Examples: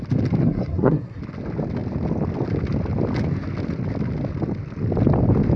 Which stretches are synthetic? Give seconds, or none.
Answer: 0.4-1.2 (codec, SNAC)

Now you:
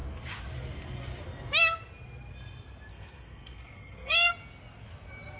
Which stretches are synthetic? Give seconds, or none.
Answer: 2.9-4.3 (codec, SNAC)

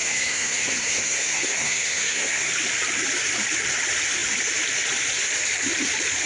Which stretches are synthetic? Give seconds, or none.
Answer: 0.0-2.5 (codec, SNAC)

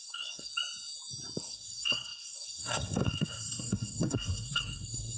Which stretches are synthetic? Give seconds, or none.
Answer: 0.0-0.5 (codec, SNAC); 1.4-5.2

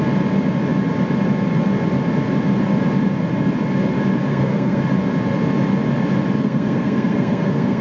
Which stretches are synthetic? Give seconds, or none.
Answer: 4.3-4.8 (codec, SNAC); 6.4-7.8

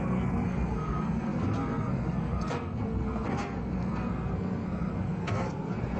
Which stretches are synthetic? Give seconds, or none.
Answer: 0.0-6.0 (codec, SNAC)

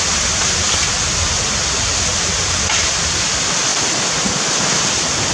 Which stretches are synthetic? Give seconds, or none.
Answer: none